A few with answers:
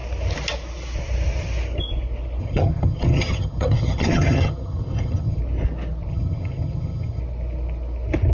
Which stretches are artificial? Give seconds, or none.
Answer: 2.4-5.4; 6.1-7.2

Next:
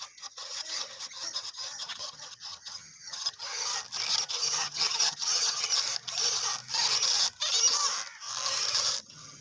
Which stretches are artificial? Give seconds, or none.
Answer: 0.0-3.7; 4.3-5.7; 9.0-9.4

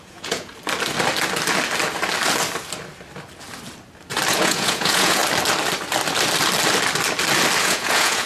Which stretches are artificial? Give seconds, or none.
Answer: 0.0-0.5; 4.3-5.2; 7.6-8.3

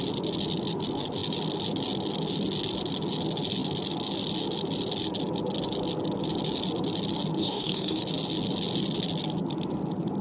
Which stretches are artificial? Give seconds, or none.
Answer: 7.4-8.0

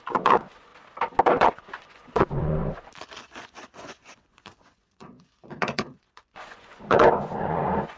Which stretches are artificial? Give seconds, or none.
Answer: 0.0-0.7; 1.2-2.6; 3.2-8.0

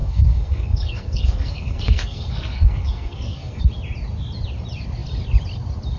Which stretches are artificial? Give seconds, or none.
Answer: 0.0-3.6

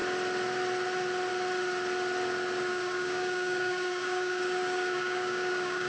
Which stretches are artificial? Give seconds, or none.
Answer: 2.7-5.9

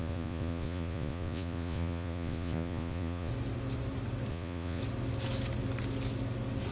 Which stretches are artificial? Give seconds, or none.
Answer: 0.0-3.3; 4.3-4.8